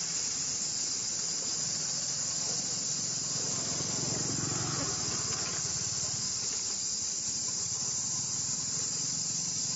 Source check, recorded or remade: remade